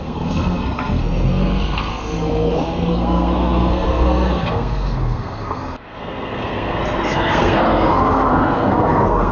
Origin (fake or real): fake